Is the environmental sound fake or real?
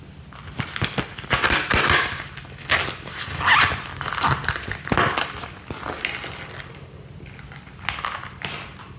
real